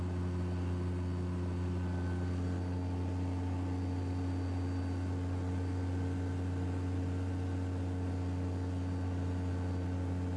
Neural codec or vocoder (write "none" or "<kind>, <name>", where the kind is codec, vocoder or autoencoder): none